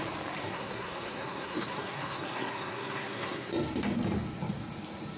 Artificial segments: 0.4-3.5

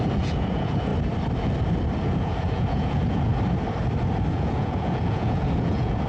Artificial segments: 0.0-0.9; 2.0-3.3; 4.3-6.1